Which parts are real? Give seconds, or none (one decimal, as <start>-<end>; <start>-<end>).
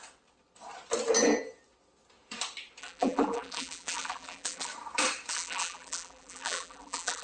0.0-2.8; 4.7-5.3